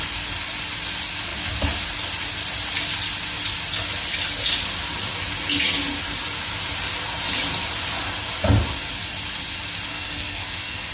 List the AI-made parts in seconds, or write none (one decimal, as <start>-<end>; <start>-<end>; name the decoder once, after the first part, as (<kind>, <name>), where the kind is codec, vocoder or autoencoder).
9.9-10.9 (codec, SNAC)